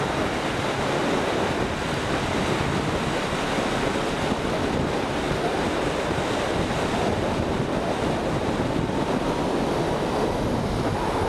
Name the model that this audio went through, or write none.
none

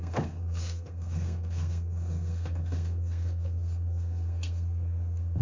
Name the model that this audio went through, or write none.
codec, SNAC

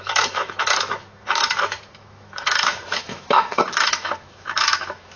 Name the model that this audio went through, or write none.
autoencoder, DAC-VAE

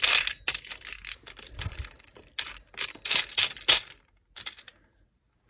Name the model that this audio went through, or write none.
none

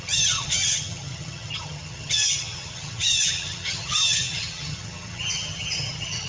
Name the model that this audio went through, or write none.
vocoder, HiFi-GAN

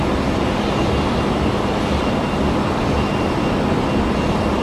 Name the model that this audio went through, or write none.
none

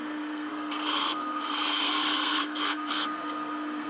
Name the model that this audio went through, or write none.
codec, SNAC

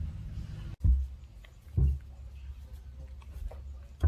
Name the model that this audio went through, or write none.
none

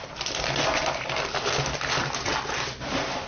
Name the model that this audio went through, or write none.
none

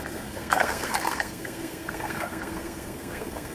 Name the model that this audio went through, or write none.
codec, SNAC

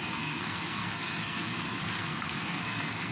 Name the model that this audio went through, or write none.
codec, SNAC